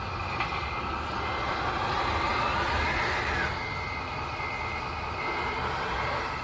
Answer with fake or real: real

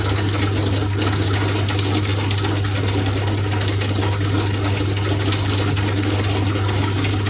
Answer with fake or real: real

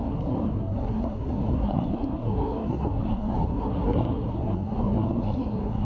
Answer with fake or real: fake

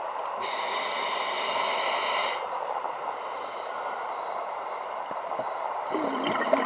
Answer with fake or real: real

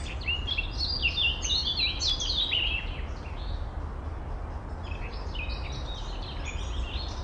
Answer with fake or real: real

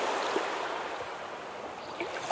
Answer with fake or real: real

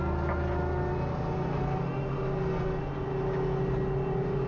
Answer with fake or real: real